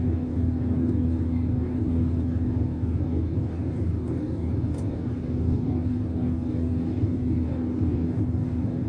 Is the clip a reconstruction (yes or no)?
yes